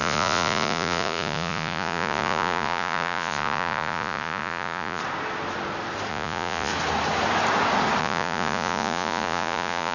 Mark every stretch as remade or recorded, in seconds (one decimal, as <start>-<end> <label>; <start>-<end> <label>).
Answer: 0.0-5.0 remade; 5.0-6.1 recorded; 6.1-6.7 remade; 6.7-8.0 recorded; 8.0-9.9 remade